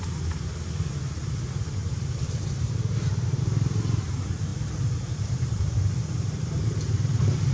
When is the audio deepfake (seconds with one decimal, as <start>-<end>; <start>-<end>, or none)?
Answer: 1.8-3.4; 4.5-6.6